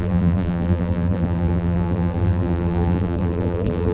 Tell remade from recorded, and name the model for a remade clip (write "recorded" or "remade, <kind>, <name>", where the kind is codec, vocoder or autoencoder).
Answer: remade, vocoder, BigVGAN v2